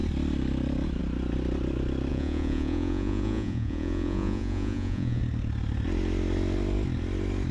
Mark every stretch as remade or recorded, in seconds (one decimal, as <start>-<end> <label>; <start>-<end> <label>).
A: 0.0-2.1 recorded; 2.1-5.2 remade; 5.2-7.5 recorded